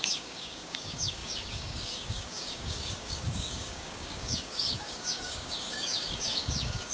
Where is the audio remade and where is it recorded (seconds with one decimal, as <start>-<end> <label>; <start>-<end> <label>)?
0.0-6.9 remade